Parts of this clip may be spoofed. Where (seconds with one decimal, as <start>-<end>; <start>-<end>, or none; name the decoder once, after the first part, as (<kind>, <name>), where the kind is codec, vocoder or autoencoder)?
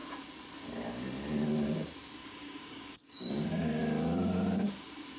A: 2.2-3.8 (codec, DAC)